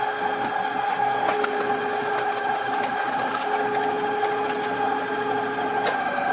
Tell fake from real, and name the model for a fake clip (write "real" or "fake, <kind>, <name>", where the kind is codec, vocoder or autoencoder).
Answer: real